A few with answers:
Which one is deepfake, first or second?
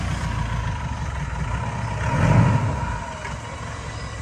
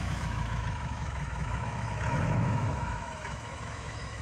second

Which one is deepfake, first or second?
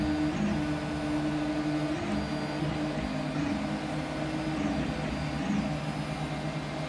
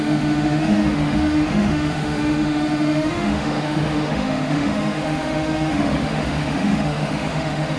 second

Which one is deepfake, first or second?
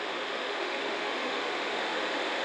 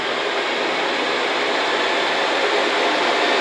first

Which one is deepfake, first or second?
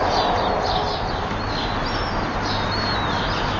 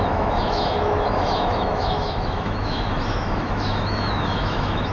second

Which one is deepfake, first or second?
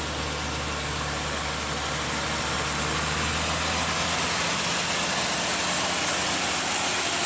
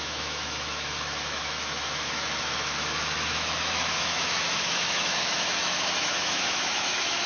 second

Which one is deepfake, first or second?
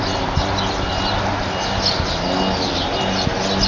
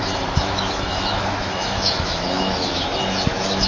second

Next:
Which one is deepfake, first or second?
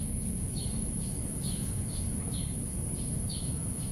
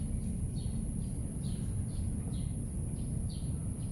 first